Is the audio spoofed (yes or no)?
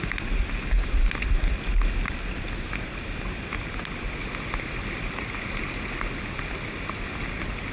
no